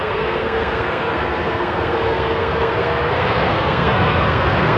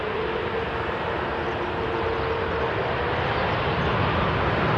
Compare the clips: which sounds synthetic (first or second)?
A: first